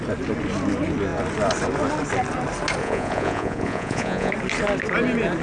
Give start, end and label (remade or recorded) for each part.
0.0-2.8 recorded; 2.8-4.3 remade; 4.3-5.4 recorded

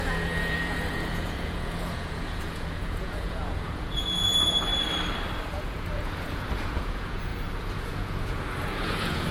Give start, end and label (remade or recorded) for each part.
0.0-4.7 remade; 4.7-5.5 recorded; 5.5-9.3 remade

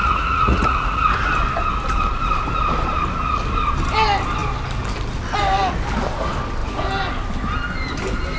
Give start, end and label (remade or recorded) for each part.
0.0-1.2 remade; 1.2-8.4 recorded

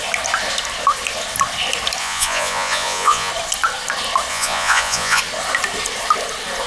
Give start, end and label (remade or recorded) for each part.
0.0-2.0 recorded; 2.0-3.3 remade; 3.3-4.3 recorded; 4.3-5.2 remade; 5.2-6.7 recorded

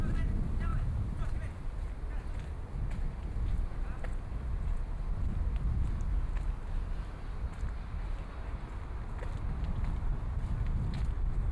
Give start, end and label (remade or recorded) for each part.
0.0-11.5 recorded

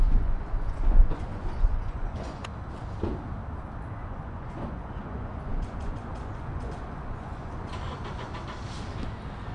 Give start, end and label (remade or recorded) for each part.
0.0-2.5 remade; 2.5-3.9 recorded; 3.9-8.3 remade; 8.3-9.5 recorded

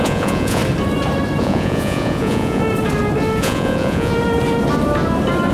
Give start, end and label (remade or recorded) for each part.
0.0-0.6 remade; 0.6-1.4 recorded; 1.4-2.6 remade; 2.6-3.4 recorded; 3.4-4.1 remade; 4.1-5.5 recorded

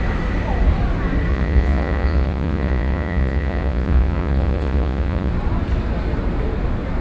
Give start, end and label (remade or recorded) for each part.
0.0-1.3 recorded; 1.3-5.3 remade; 5.3-7.0 recorded